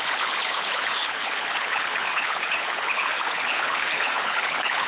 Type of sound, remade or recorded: remade